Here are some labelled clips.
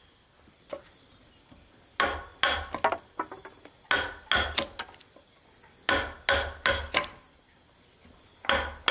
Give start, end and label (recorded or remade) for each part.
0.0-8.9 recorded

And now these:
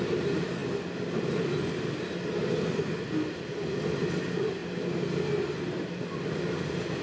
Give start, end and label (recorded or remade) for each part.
0.0-7.0 recorded

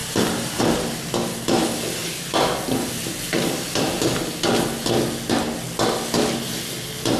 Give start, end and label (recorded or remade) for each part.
0.0-0.6 remade; 0.6-7.2 recorded

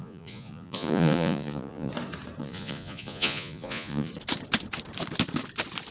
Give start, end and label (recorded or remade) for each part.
0.0-1.9 remade; 1.9-2.4 recorded; 2.4-4.1 remade; 4.1-5.9 recorded

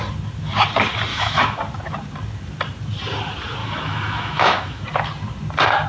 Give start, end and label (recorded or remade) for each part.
0.0-1.1 recorded; 1.1-1.6 remade; 1.6-3.6 recorded; 3.6-4.8 remade; 4.8-5.9 recorded

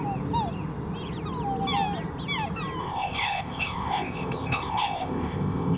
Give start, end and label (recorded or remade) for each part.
0.0-2.8 recorded; 2.8-5.8 remade